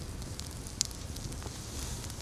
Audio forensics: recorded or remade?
recorded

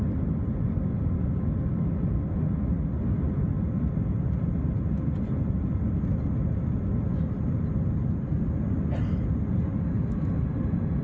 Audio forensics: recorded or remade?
recorded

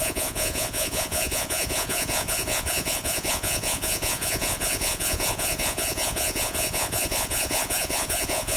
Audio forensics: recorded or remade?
remade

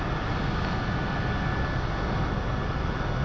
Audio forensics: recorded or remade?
recorded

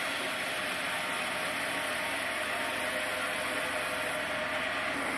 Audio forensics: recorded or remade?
recorded